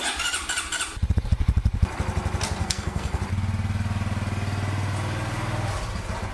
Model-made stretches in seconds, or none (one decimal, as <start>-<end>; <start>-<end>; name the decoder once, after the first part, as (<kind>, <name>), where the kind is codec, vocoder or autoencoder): 2.6-3.2 (codec, SNAC)